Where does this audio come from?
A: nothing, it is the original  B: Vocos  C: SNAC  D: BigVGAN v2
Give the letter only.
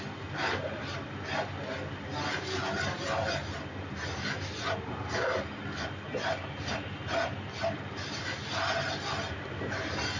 A